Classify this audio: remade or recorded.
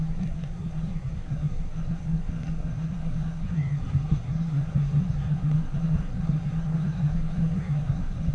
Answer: remade